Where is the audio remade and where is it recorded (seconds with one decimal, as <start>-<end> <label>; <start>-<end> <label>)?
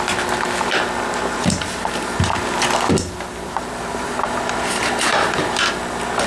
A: 0.0-3.3 recorded; 3.3-5.7 remade; 5.7-6.3 recorded